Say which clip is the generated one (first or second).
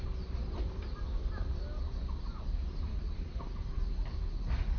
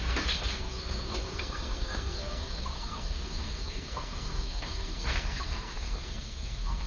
second